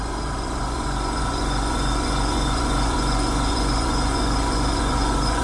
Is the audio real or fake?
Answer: fake